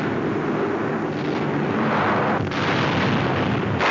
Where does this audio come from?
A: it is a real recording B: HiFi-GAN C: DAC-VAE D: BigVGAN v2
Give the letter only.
A